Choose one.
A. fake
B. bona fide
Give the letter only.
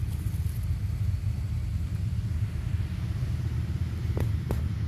B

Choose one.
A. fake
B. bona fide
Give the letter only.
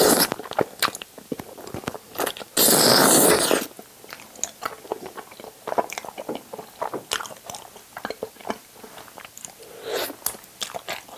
B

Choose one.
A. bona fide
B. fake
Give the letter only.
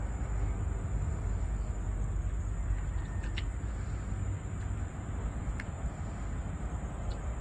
A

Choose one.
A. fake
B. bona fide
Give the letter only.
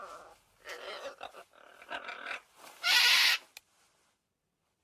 B